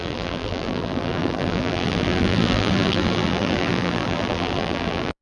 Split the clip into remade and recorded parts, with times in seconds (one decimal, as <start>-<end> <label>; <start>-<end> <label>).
0.0-5.2 remade